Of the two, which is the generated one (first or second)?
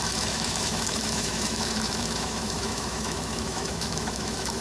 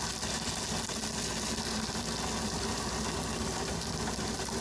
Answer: first